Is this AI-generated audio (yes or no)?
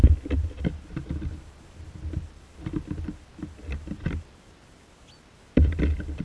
no